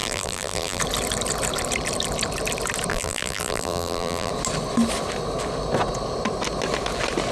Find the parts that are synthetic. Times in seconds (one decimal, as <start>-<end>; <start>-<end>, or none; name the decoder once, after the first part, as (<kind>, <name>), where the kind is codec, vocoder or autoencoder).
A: 0.0-0.8 (vocoder, BigVGAN v2); 2.9-4.3